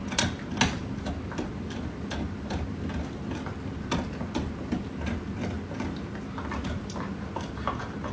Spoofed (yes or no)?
no